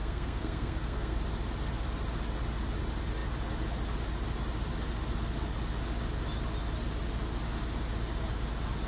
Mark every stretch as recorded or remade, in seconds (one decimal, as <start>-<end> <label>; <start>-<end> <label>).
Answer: 0.0-1.2 remade; 1.2-8.9 recorded